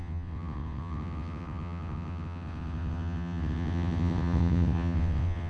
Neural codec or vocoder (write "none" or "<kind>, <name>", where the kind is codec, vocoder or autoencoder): vocoder, WaveNeXt